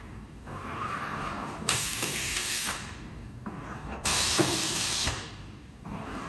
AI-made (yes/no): yes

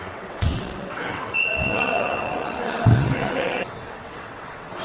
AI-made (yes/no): yes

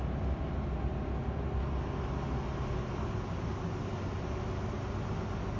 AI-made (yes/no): no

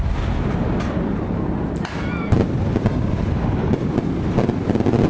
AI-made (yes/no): no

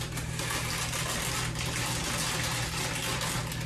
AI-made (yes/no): no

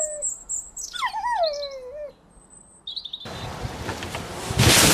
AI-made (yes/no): no